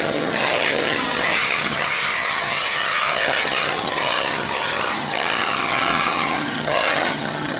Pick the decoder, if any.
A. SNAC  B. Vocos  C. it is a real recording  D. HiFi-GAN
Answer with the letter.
D